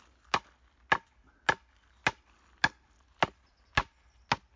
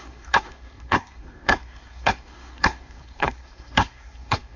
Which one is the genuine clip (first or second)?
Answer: first